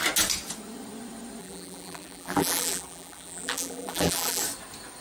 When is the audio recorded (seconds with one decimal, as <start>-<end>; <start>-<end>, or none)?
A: 0.0-1.4; 4.4-5.0